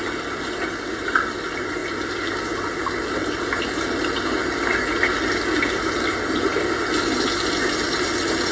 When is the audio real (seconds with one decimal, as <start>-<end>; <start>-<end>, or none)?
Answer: 0.0-8.5